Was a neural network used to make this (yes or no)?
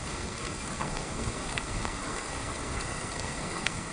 yes